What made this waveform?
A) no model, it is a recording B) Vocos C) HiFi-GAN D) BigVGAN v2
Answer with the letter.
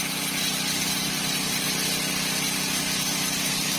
A